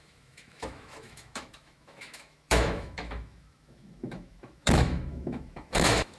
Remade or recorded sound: remade